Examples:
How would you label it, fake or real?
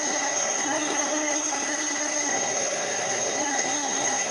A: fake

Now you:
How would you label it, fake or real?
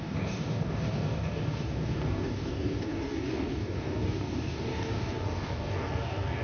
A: fake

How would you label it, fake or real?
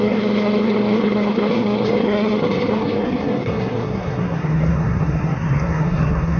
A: fake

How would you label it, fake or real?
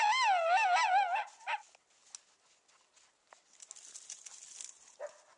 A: real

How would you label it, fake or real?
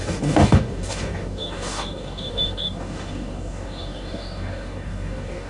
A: fake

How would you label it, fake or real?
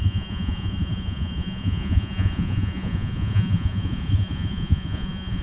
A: fake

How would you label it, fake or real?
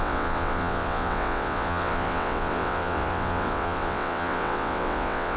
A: fake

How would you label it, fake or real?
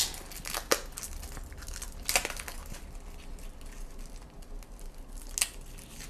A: real